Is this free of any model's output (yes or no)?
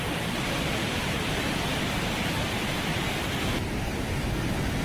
no